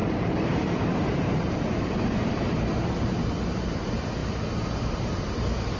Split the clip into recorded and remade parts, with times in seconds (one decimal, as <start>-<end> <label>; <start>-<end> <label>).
0.0-2.4 remade; 2.4-5.8 recorded